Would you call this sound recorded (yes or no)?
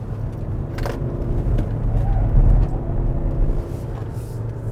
yes